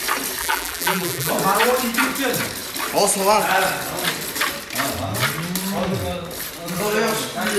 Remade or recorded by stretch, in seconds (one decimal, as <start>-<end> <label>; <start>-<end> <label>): 0.0-0.4 recorded; 0.4-1.3 remade; 1.3-7.6 recorded